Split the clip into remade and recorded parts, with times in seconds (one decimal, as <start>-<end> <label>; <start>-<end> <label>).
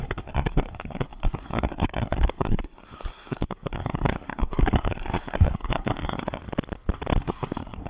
0.0-6.4 remade; 6.4-7.2 recorded; 7.2-7.9 remade